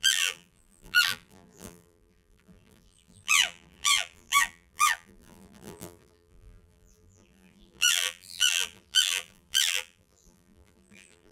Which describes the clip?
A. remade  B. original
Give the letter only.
A